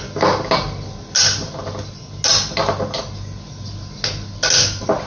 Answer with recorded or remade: recorded